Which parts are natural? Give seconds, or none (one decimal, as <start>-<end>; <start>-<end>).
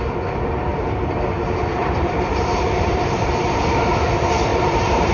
0.0-0.7; 3.8-4.5